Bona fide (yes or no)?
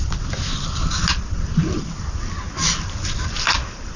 yes